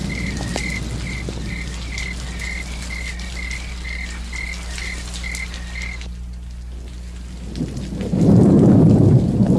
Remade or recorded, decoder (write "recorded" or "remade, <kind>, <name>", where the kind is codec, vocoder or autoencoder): recorded